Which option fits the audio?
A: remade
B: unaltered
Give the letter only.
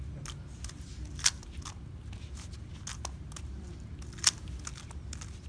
B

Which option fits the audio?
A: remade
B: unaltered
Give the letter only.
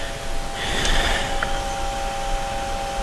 B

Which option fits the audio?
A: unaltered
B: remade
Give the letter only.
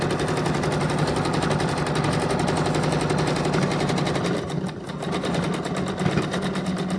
A